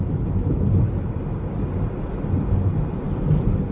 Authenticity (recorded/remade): recorded